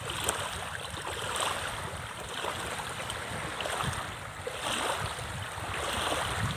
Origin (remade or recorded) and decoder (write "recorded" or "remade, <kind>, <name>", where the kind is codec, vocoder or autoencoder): recorded